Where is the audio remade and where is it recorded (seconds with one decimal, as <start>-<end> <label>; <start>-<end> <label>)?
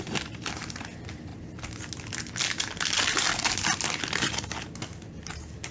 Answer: 0.0-5.7 recorded